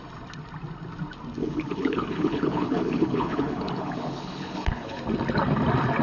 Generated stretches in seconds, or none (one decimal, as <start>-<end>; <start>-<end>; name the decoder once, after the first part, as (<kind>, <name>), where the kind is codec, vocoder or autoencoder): 1.4-5.0 (codec, HILCodec)